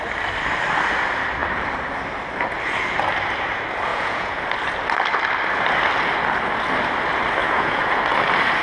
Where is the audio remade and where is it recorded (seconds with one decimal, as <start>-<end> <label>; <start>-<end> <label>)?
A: 0.0-3.9 recorded; 3.9-4.4 remade; 4.4-7.4 recorded; 7.4-8.0 remade; 8.0-8.6 recorded